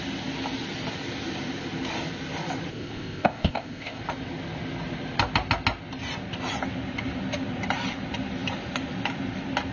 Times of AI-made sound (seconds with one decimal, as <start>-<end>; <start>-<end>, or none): 2.7-4.0